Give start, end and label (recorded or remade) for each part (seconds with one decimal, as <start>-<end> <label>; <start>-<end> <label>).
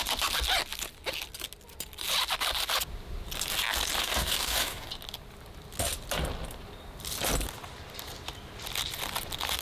0.0-4.0 recorded; 4.0-4.9 remade; 4.9-9.6 recorded